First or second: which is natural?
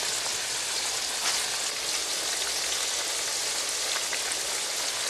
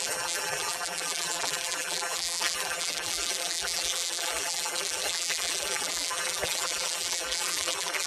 first